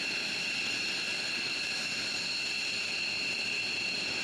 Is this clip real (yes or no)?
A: yes